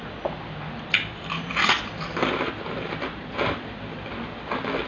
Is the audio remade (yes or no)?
no